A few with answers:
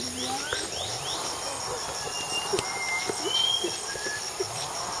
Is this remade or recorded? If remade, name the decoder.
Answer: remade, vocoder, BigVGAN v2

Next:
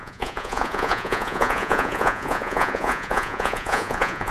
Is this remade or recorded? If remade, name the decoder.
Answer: remade, vocoder, Vocos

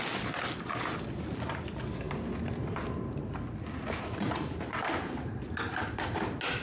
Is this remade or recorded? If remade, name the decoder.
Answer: recorded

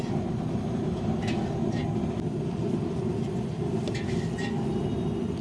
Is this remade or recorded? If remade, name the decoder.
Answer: recorded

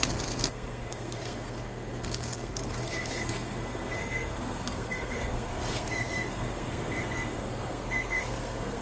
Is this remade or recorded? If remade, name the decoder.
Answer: remade, codec, SNAC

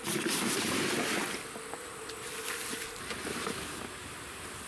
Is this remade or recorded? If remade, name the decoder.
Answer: recorded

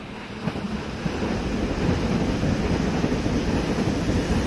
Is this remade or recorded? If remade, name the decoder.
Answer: recorded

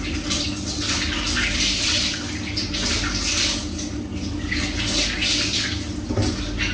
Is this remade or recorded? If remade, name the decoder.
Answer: recorded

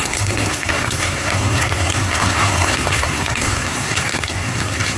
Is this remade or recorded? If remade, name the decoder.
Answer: remade, codec, SNAC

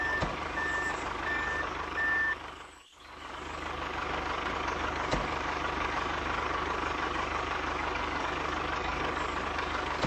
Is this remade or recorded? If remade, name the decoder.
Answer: remade, codec, DAC